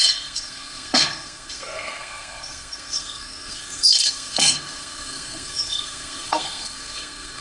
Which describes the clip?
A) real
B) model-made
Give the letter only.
B